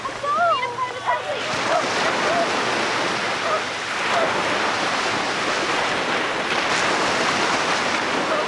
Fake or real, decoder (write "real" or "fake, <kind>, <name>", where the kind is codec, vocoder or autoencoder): real